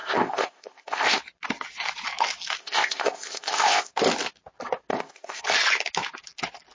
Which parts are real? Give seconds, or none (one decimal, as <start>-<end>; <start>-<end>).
1.2-2.6; 3.9-4.9; 5.4-6.7